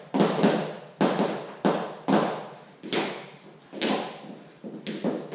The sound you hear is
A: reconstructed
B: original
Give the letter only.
B